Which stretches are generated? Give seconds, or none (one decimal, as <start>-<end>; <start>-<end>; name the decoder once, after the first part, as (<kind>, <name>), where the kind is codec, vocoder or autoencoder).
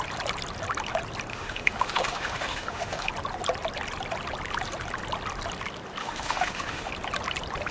1.3-3.1 (autoencoder, DAC-VAE); 6.0-6.9